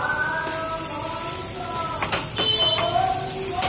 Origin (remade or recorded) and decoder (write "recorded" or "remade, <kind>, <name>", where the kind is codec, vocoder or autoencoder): recorded